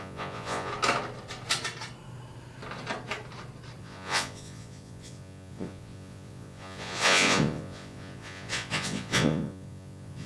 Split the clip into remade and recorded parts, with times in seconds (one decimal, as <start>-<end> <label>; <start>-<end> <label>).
0.0-0.7 remade; 0.7-3.8 recorded; 3.8-10.3 remade